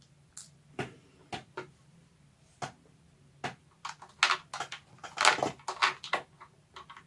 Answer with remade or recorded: recorded